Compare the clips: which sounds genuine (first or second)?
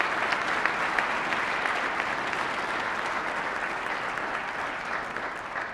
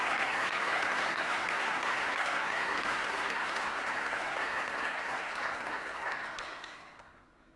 first